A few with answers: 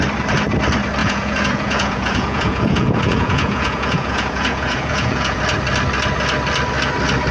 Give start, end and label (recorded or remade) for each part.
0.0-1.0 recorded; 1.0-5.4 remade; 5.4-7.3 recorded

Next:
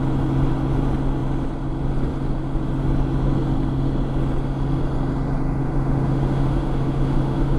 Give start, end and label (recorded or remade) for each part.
0.0-5.6 recorded; 5.6-7.6 remade

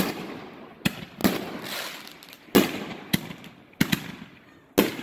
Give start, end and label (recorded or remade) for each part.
0.0-5.0 recorded

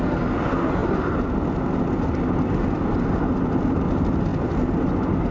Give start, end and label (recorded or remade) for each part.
0.0-5.3 recorded

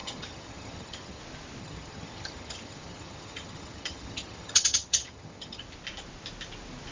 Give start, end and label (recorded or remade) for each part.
0.0-1.2 remade; 1.2-1.6 recorded; 1.6-5.6 remade; 5.6-6.9 recorded

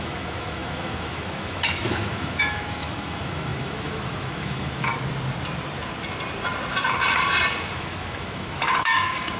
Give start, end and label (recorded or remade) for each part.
0.0-4.9 remade; 4.9-7.8 recorded; 7.8-9.4 remade